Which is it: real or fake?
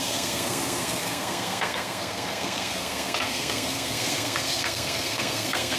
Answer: fake